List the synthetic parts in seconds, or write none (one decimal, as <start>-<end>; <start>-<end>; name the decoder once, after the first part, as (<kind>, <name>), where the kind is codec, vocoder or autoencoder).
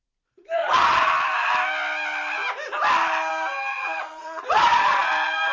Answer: 0.6-1.1 (vocoder, Vocos); 3.7-5.1